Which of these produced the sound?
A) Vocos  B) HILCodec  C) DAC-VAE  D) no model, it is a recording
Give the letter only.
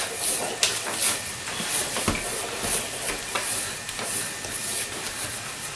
D